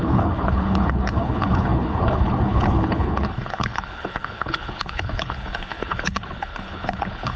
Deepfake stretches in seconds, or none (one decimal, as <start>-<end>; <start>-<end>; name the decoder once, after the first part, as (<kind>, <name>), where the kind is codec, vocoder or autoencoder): 0.0-7.4 (codec, HILCodec)